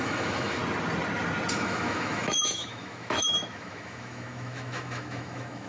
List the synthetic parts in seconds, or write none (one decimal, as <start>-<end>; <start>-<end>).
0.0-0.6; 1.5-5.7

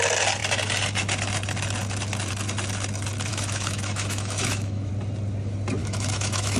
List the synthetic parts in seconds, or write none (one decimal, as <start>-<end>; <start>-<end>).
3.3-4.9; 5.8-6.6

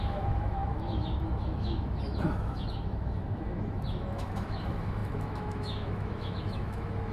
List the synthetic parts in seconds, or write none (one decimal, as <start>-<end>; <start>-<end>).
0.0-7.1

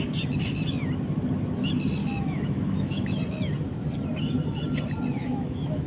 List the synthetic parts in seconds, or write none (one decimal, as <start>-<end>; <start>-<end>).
2.0-3.2; 5.2-5.9